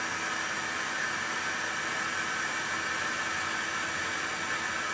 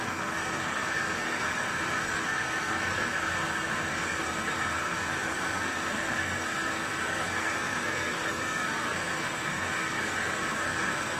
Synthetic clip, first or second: second